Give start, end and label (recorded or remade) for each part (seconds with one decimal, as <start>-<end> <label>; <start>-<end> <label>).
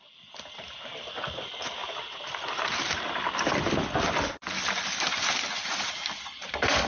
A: 0.0-6.9 recorded